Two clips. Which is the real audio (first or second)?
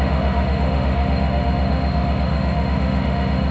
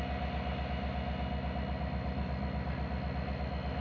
second